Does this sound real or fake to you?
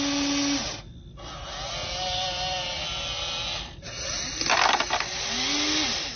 real